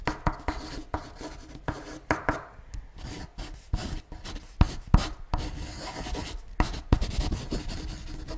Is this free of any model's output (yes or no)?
yes